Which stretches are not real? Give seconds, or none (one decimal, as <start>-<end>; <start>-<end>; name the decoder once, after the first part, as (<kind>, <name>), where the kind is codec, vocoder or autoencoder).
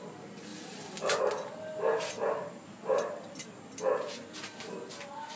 0.5-1.2 (vocoder, BigVGAN v2)